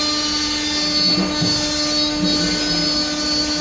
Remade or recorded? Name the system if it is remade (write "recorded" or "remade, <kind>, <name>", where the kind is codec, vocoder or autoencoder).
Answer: recorded